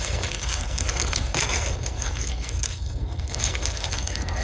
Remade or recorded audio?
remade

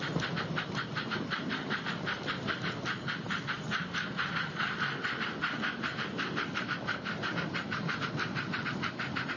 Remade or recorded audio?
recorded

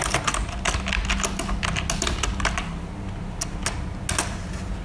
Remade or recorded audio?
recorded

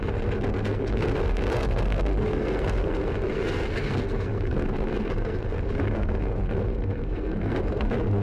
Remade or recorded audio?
remade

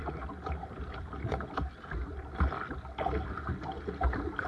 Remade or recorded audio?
recorded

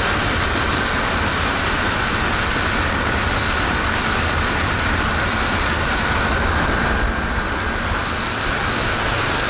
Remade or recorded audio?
recorded